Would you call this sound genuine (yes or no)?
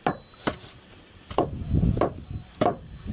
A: yes